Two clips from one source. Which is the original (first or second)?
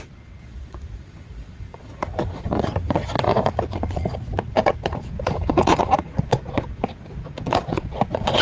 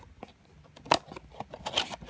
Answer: second